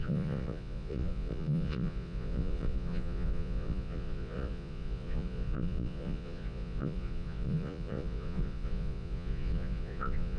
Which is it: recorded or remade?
remade